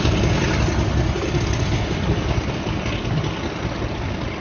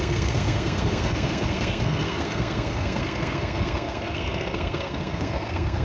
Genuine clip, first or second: first